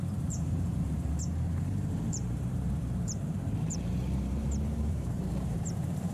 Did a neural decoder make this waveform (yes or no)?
yes